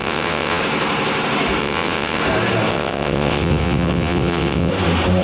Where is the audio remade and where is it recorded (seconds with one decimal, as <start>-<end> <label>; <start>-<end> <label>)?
0.0-0.6 remade; 0.6-1.6 recorded; 1.6-2.2 remade; 2.2-2.7 recorded; 2.7-4.7 remade; 4.7-5.2 recorded